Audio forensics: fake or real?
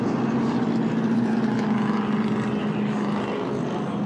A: real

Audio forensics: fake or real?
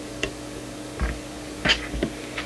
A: fake